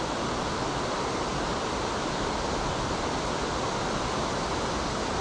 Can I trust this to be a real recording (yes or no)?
yes